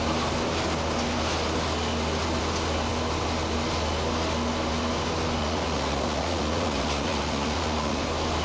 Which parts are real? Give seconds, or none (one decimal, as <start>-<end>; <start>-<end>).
0.0-5.4; 8.0-8.4